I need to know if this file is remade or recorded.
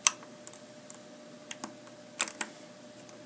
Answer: recorded